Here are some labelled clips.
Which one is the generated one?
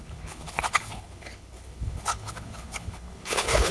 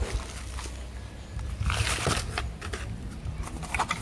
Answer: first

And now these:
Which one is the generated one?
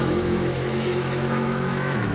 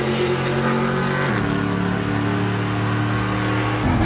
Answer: first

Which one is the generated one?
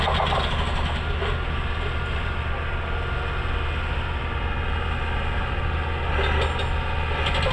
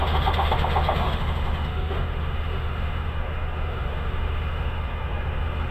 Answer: second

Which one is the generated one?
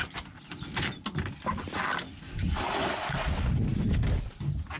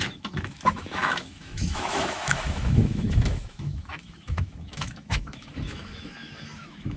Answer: second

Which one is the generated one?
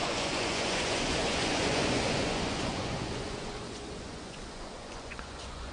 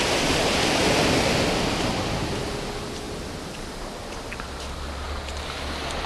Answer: first